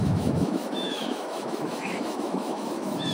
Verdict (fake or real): fake